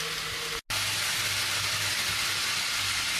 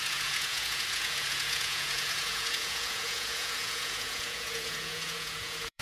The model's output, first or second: second